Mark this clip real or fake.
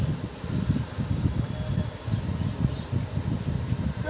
real